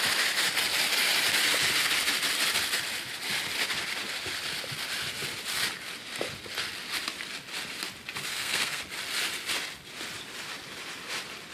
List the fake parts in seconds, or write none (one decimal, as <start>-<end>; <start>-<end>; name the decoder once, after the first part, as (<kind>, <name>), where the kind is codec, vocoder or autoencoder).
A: 8.3-8.8 (codec, SNAC)